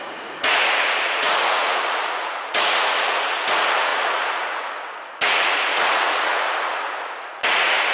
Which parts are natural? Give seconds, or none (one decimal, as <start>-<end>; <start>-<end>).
none